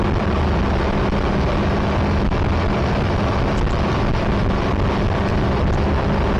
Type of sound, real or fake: real